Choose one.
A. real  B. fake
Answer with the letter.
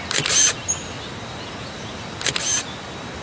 A